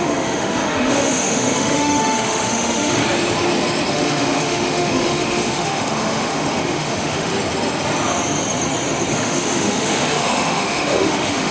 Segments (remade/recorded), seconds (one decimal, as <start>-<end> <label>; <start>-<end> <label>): 0.0-3.0 remade; 3.0-3.9 recorded; 3.9-7.3 remade; 7.3-9.1 recorded; 9.1-11.5 remade

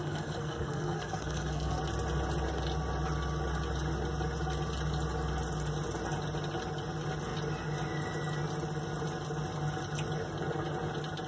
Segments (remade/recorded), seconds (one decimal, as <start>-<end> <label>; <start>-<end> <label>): 0.0-1.8 remade; 1.8-11.3 recorded

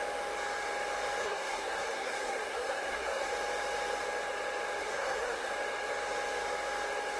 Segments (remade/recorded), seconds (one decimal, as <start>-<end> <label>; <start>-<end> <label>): 0.0-1.2 recorded; 1.2-3.3 remade; 3.3-4.8 recorded; 4.8-5.5 remade; 5.5-7.2 recorded

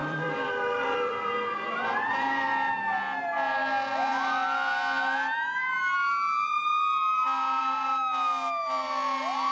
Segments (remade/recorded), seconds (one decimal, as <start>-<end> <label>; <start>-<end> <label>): 0.0-2.5 remade; 2.5-9.5 recorded